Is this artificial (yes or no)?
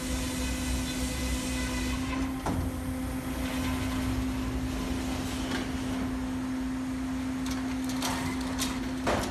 no